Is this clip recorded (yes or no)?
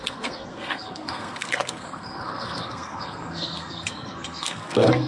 no